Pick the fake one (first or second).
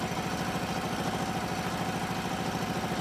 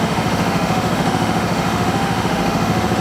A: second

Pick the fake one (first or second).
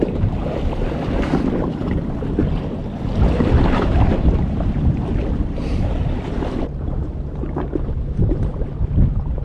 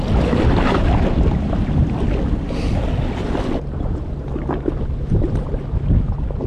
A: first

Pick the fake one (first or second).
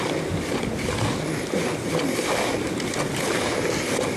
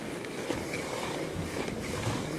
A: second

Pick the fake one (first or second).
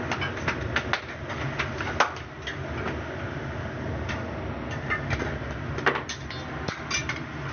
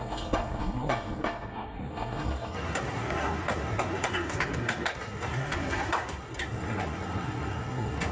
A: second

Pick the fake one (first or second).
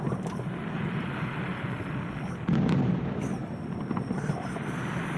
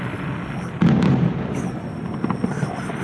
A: first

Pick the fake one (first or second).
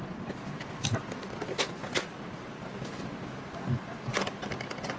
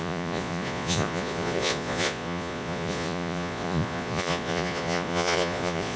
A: second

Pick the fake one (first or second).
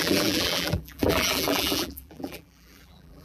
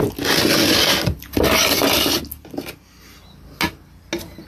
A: first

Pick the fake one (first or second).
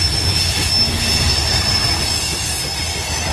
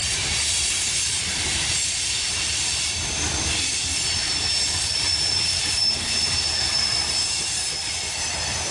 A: second